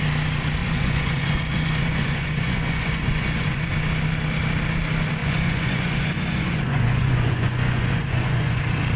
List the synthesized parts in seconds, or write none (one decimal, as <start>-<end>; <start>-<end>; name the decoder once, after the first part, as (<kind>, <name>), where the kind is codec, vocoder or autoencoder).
0.6-3.7 (vocoder, Vocos); 5.2-8.6